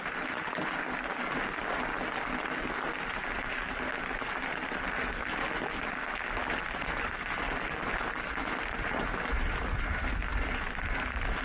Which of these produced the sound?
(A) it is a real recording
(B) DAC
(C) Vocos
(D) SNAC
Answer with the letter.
A